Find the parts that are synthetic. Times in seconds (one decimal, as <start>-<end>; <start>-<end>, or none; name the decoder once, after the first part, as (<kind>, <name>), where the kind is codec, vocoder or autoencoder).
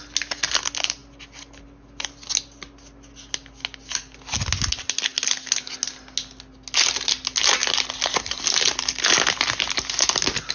none